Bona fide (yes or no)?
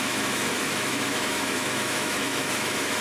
no